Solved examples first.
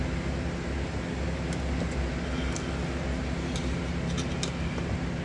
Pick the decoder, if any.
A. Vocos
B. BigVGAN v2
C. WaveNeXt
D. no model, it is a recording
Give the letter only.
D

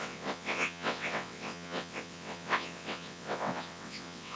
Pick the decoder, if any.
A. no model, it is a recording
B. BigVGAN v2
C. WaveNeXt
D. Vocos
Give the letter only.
C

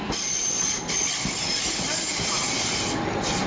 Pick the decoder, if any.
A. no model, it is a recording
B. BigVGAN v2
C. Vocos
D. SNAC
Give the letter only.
A